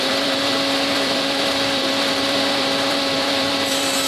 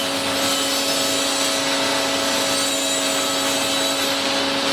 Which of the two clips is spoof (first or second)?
first